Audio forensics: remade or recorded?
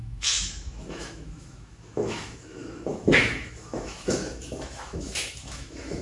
remade